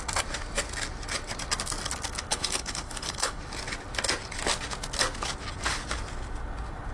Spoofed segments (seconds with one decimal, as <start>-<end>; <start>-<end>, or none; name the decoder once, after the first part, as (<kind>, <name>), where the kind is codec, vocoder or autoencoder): 2.3-3.4 (codec, HILCodec)